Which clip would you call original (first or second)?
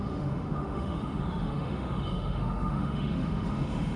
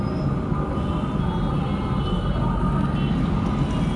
second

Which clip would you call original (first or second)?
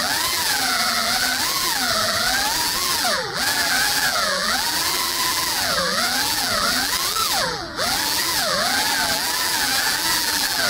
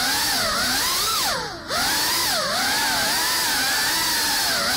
second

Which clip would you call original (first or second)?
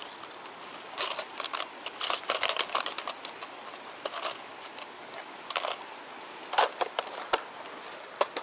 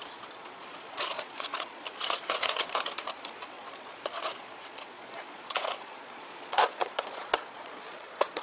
first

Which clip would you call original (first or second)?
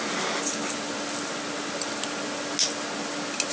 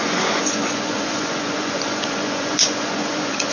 first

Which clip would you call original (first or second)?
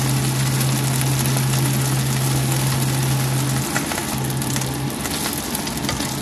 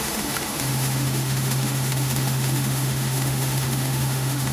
first